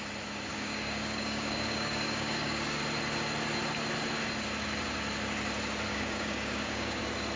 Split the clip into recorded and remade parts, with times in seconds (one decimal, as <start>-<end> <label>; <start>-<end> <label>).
0.0-0.5 recorded; 0.5-2.8 remade; 2.8-5.9 recorded; 5.9-7.0 remade; 7.0-7.4 recorded